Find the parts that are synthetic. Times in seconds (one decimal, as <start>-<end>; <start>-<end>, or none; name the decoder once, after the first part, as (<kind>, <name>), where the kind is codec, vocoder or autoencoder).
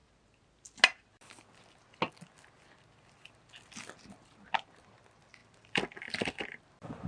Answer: 5.4-6.6 (vocoder, BigVGAN v2)